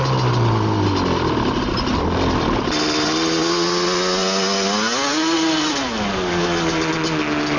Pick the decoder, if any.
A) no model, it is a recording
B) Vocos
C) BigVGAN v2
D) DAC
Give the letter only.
A